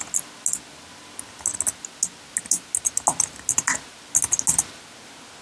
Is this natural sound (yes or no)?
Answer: yes